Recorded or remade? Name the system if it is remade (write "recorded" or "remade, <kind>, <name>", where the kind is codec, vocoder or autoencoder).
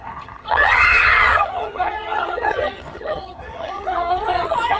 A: remade, vocoder, HiFi-GAN